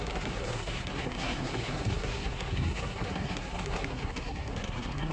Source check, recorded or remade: remade